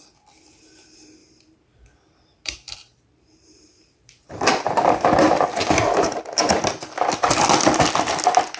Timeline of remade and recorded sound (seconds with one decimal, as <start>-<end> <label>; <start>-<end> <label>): 0.0-1.2 recorded; 1.2-6.2 remade; 6.2-8.6 recorded